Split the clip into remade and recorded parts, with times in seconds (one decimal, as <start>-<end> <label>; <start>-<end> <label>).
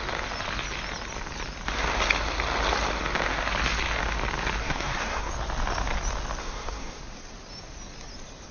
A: 0.0-4.6 recorded; 4.6-5.3 remade; 5.3-6.4 recorded; 6.4-7.0 remade; 7.0-8.5 recorded